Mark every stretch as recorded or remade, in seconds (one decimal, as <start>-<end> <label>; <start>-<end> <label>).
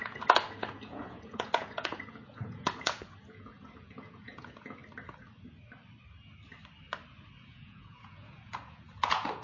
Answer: 0.0-4.8 remade; 4.8-7.4 recorded; 7.4-9.4 remade